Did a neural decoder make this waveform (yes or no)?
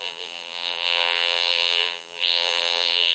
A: yes